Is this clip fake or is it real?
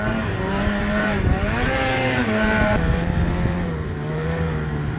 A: fake